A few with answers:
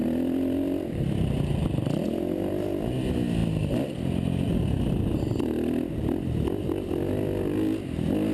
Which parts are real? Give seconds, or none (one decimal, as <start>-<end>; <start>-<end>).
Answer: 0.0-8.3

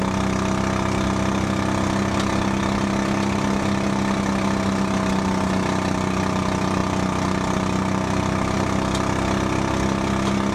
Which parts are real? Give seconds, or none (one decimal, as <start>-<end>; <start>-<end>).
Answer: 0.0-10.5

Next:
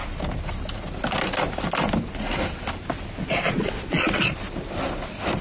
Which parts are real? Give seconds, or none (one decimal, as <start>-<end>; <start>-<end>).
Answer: 0.0-3.2; 4.3-5.4